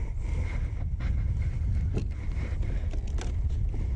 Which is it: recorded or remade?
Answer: recorded